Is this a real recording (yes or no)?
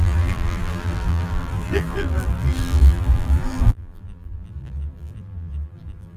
no